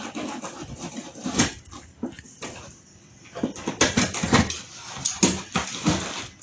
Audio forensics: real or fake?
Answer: real